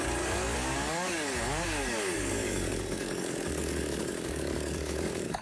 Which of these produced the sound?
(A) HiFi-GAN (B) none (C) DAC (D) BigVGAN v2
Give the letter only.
C